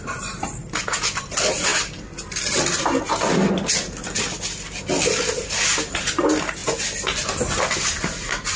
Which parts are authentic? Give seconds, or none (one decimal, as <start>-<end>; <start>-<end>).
0.0-8.6